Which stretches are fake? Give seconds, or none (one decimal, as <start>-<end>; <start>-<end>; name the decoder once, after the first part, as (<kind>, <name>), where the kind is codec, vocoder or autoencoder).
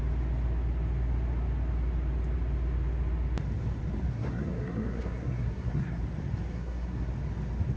4.1-6.0 (codec, SNAC); 6.5-7.1